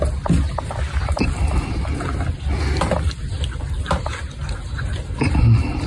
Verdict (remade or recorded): recorded